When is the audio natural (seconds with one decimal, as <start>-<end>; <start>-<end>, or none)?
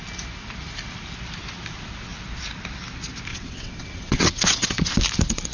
0.0-3.3; 4.9-5.5